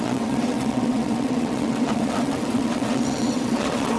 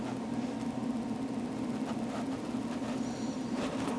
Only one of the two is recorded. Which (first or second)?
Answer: second